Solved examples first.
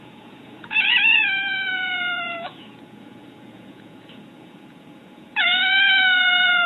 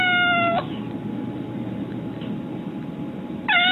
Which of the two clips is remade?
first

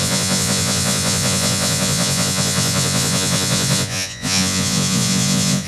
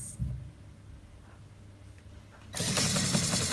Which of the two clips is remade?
first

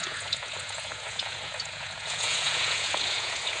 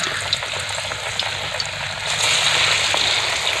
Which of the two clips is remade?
first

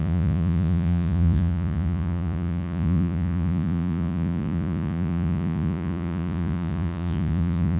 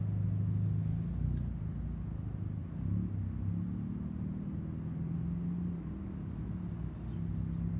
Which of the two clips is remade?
first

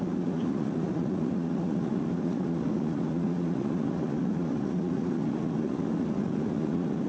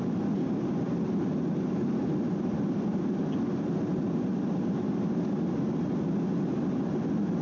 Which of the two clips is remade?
first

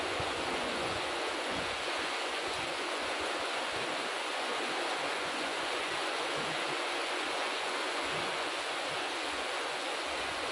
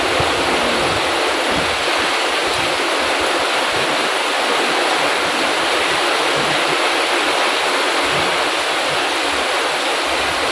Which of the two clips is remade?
first